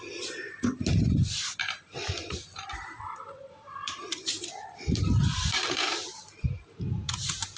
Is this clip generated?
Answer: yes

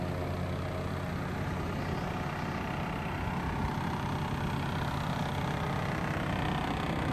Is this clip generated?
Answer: no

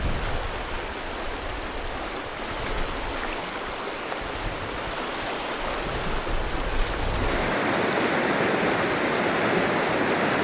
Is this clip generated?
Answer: no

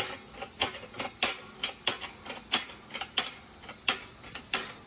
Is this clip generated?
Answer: no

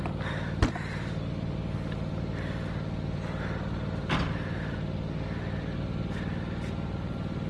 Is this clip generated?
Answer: no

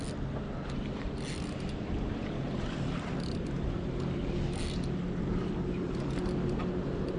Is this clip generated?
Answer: no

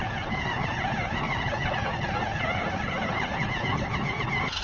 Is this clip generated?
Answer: yes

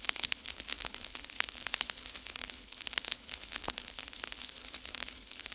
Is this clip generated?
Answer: yes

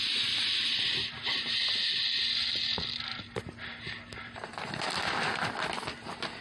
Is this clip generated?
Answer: no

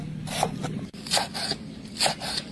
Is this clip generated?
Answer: no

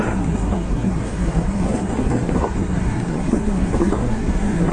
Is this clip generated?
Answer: yes